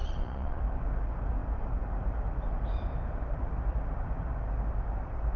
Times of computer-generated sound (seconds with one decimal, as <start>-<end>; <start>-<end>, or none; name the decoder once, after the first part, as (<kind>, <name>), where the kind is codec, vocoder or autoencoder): 0.0-0.6 (vocoder, Vocos)